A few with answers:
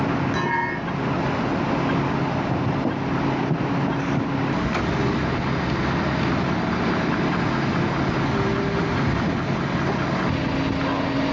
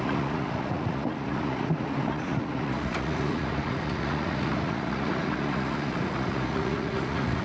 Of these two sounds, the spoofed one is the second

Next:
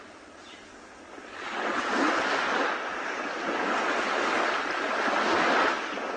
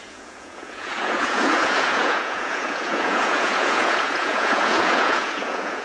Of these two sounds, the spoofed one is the second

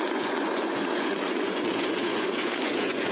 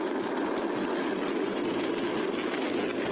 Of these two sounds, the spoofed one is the first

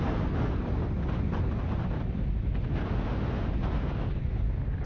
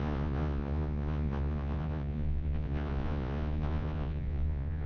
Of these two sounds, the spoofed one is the second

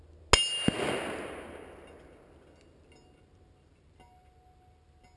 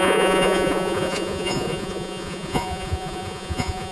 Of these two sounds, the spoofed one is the second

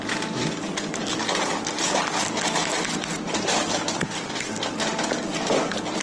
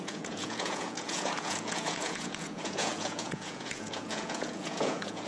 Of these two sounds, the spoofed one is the second